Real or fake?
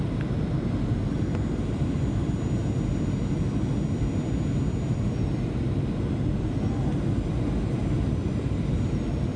real